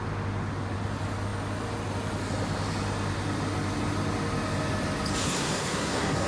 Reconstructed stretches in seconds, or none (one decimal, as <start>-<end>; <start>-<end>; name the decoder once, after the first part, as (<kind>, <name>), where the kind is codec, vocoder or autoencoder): 5.2-6.3 (codec, SNAC)